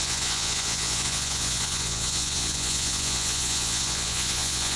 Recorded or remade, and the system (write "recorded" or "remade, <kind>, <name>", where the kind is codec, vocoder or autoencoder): remade, vocoder, Vocos